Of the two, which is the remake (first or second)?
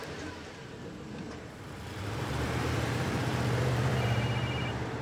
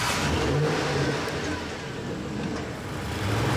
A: first